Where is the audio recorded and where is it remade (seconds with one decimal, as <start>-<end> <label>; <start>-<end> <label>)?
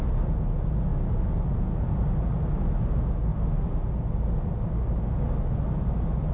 0.0-6.3 recorded